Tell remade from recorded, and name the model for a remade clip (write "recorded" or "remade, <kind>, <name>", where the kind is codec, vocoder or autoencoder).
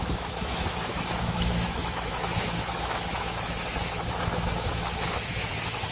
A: remade, autoencoder, DAC-VAE